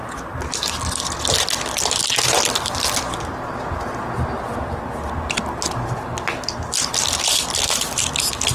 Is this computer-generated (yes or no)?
no